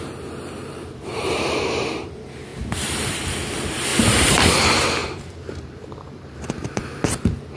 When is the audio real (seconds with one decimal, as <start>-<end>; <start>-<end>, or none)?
0.0-0.6; 2.1-2.5; 3.2-3.9; 4.5-5.0; 6.7-7.6